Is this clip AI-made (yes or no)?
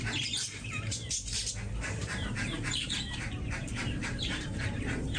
yes